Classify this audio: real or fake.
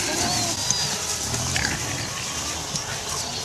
real